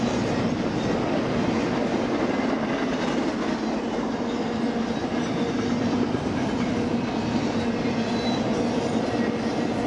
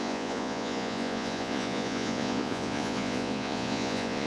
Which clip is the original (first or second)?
first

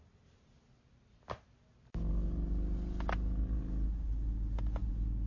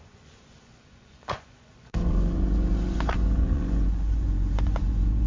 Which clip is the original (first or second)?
first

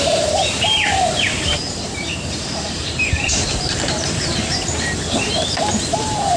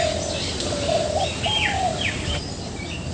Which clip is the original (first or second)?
second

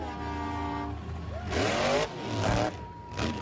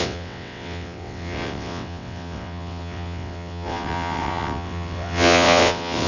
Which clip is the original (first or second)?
first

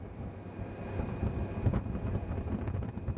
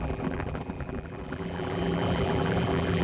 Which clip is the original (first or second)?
first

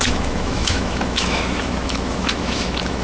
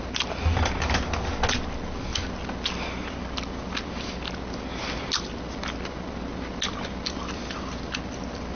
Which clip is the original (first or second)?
second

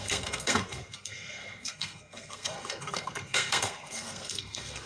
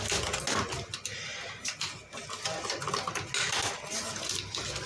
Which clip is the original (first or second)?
second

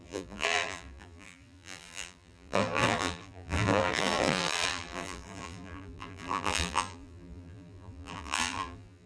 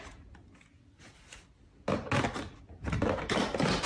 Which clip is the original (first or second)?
second